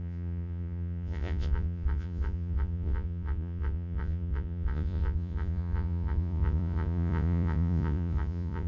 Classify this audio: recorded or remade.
remade